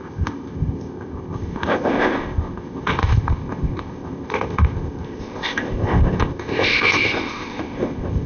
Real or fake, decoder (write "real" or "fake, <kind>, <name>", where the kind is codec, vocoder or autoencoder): fake, codec, ZipCodec